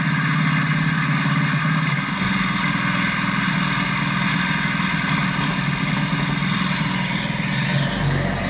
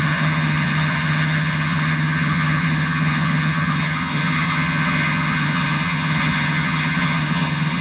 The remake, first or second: second